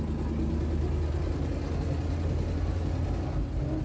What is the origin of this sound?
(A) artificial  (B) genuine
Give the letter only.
B